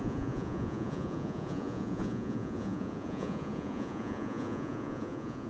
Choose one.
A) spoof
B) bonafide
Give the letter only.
A